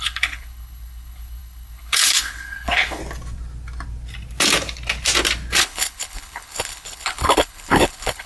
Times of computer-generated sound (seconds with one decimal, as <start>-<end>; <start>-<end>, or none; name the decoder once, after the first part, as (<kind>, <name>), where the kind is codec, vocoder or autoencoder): 0.0-3.0 (codec, HILCodec); 5.6-8.3